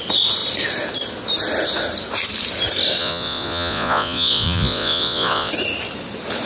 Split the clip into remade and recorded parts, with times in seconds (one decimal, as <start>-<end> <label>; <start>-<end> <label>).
0.0-3.0 recorded; 3.0-5.5 remade; 5.5-6.5 recorded